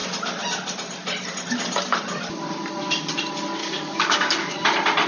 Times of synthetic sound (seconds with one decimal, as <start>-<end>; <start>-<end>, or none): 3.6-4.5